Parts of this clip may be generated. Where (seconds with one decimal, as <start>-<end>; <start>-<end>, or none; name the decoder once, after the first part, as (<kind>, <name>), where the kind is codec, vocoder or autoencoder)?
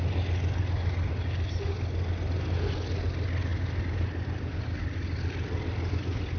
none